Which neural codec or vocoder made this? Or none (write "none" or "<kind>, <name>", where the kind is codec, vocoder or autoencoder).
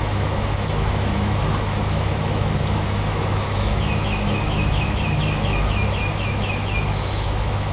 autoencoder, DAC-VAE